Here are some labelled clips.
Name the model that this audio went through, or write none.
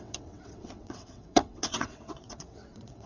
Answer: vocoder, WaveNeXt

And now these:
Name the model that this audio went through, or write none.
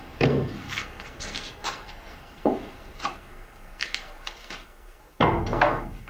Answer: codec, SNAC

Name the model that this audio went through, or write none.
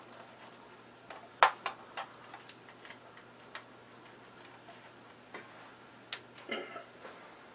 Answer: none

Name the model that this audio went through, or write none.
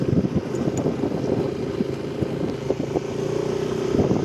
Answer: none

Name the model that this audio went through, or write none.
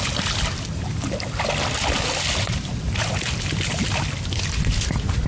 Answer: none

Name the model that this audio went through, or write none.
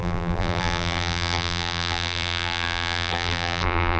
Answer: vocoder, BigVGAN v2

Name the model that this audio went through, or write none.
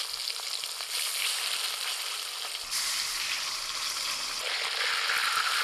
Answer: none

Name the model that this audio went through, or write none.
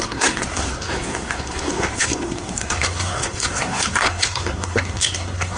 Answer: codec, SNAC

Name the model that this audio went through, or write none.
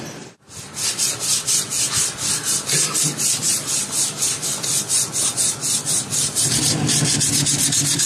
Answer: vocoder, BigVGAN v2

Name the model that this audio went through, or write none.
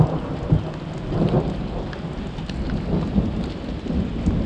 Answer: none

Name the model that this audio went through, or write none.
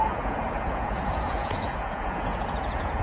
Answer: vocoder, Vocos